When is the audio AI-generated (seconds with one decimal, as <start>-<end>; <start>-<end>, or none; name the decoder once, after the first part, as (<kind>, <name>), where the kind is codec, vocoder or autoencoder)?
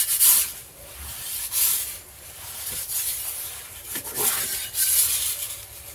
1.7-4.2 (vocoder, BigVGAN v2)